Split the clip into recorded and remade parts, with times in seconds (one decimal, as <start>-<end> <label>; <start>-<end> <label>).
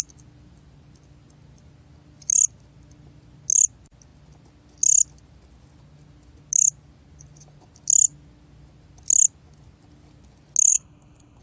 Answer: 0.0-10.7 recorded; 10.7-11.4 remade